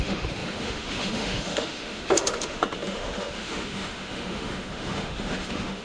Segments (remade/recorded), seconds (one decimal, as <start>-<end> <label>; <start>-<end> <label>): 0.0-5.8 remade